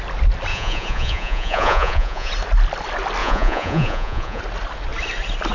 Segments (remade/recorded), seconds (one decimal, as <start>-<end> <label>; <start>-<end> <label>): 0.0-0.5 recorded; 0.5-2.3 remade; 2.3-3.2 recorded; 3.2-4.4 remade; 4.4-5.5 recorded